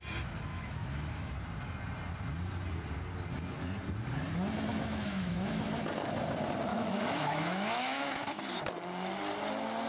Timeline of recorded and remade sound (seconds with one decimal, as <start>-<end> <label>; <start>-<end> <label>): 0.0-0.5 recorded; 0.5-1.3 remade; 1.3-4.7 recorded; 4.7-5.9 remade; 5.9-6.7 recorded; 6.7-8.4 remade; 8.4-9.9 recorded